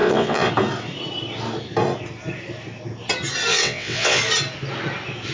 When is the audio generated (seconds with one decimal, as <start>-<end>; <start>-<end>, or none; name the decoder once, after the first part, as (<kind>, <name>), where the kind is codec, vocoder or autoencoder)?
0.0-0.5 (vocoder, WaveNeXt); 3.5-4.2